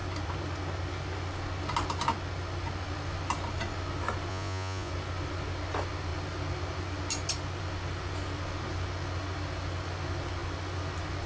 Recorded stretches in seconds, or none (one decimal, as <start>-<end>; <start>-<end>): 0.0-4.3; 4.9-11.3